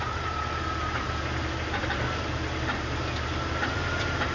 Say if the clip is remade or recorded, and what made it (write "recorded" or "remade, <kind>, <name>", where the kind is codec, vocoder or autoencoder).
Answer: recorded